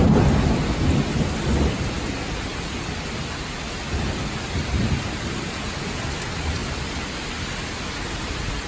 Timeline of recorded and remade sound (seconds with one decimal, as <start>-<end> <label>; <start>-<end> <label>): 0.0-8.7 recorded